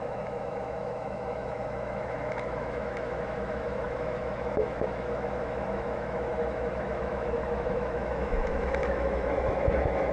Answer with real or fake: fake